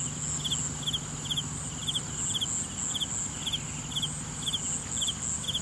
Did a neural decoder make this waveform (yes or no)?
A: no